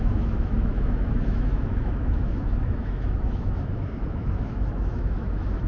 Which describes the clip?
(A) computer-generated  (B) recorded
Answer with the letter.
A